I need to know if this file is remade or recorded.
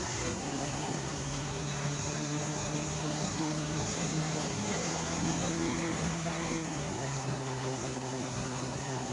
remade